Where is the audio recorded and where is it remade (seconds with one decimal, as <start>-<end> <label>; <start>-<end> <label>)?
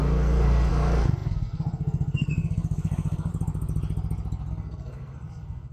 0.0-3.3 remade; 3.3-4.5 recorded; 4.5-5.7 remade